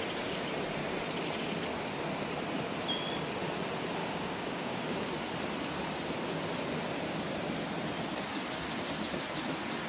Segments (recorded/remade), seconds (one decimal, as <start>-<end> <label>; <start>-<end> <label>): 0.0-4.0 recorded; 4.0-5.1 remade; 5.1-9.9 recorded